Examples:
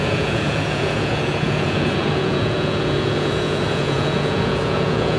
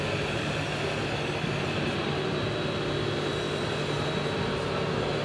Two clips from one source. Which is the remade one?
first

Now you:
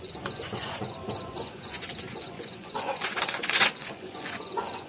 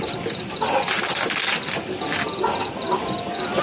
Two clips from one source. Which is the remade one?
first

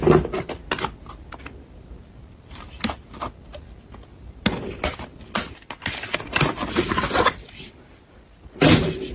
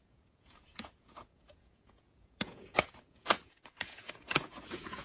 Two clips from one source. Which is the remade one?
second